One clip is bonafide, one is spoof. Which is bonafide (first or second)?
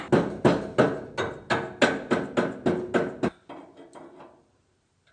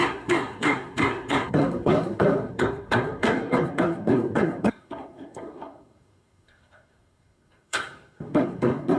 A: first